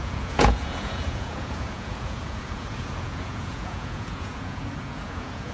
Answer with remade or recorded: remade